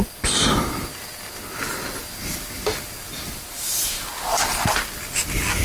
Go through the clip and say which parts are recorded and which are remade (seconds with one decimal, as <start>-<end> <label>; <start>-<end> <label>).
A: 0.0-3.1 recorded; 3.1-4.0 remade; 4.0-5.6 recorded